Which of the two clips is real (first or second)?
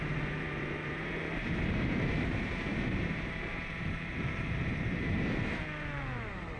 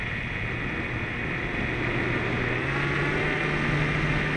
second